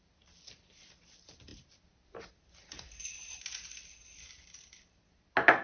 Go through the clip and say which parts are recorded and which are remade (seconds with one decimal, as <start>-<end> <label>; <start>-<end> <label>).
0.0-5.6 recorded